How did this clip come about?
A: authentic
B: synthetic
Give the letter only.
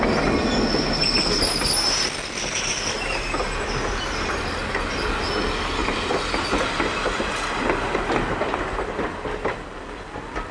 A